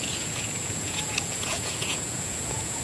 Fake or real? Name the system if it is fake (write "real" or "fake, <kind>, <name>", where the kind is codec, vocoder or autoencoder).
fake, vocoder, Vocos